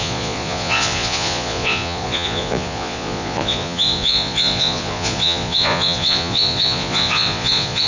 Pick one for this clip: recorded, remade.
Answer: remade